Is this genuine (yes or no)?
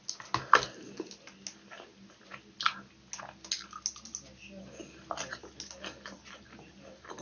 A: yes